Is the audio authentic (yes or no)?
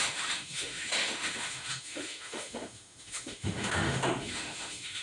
no